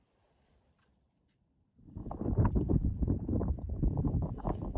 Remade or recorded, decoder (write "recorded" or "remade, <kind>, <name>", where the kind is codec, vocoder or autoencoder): recorded